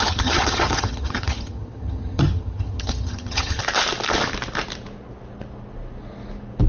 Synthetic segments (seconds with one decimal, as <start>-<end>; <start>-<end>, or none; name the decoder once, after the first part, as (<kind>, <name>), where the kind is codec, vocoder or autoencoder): 0.0-3.6 (vocoder, HiFi-GAN)